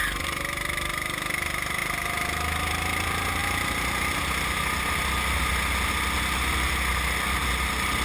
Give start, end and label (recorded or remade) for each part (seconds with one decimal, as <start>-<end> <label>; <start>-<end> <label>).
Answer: 0.0-8.0 recorded